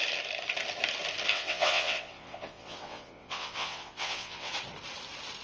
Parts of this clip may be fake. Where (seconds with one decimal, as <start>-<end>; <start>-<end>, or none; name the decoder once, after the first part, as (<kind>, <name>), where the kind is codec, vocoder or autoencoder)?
1.3-4.5 (vocoder, WaveNeXt)